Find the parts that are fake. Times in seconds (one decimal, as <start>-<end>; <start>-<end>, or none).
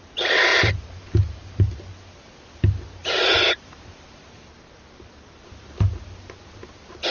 0.5-1.6; 3.0-4.2